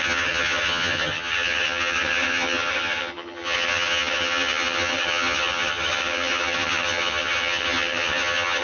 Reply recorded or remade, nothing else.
remade